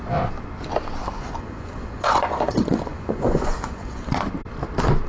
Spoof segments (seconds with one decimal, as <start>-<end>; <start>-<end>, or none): 1.0-4.1